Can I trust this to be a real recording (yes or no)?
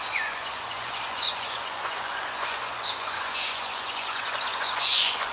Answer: no